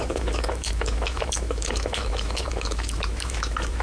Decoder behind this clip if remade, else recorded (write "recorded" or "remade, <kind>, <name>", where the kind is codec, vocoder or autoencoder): remade, autoencoder, DAC-VAE